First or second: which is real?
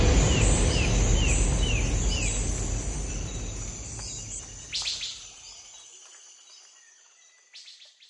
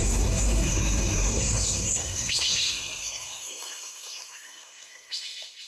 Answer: first